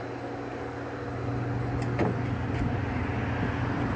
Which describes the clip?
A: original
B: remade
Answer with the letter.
A